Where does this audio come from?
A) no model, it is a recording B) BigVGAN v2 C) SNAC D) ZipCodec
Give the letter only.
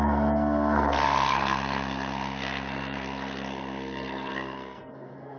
C